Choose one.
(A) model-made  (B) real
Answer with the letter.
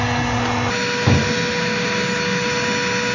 B